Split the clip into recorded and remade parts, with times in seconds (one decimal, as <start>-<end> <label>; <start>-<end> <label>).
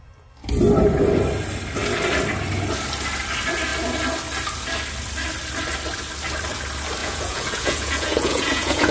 0.0-7.0 recorded; 7.0-8.9 remade